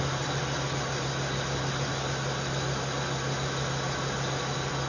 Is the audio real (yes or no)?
yes